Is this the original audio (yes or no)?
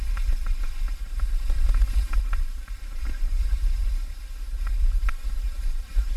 no